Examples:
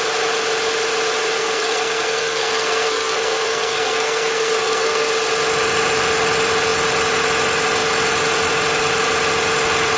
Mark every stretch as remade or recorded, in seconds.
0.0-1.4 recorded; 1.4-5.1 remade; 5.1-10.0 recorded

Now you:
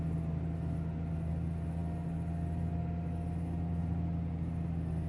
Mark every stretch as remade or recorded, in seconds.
0.0-5.1 recorded